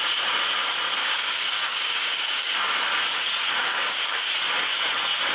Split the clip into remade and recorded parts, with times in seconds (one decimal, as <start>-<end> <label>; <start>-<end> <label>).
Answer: 0.0-1.0 recorded; 1.0-2.5 remade; 2.5-3.6 recorded; 3.6-4.3 remade; 4.3-5.3 recorded

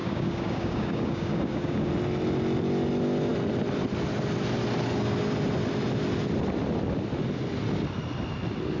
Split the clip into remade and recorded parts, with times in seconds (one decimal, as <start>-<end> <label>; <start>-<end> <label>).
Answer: 0.0-1.9 remade; 1.9-8.8 recorded

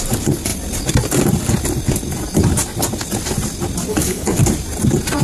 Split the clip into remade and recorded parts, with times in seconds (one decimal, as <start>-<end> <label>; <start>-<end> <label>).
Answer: 0.0-3.9 recorded; 3.9-4.4 remade; 4.4-5.2 recorded

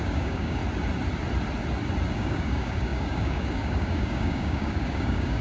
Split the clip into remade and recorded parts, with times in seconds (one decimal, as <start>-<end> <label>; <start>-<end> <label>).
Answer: 0.0-0.6 remade; 0.6-2.1 recorded; 2.1-5.4 remade